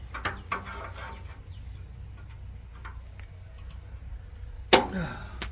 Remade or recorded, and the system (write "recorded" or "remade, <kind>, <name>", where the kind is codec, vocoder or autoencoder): recorded